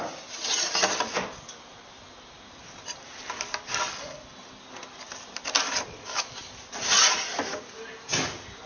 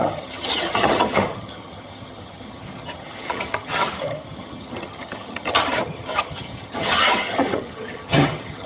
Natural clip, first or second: first